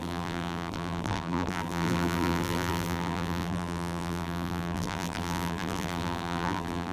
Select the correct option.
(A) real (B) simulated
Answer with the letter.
B